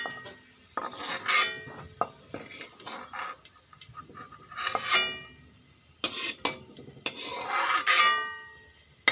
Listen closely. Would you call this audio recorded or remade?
recorded